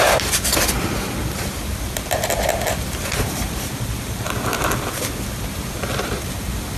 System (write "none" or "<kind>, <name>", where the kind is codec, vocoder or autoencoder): vocoder, BigVGAN v2